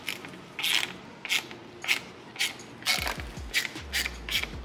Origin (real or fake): real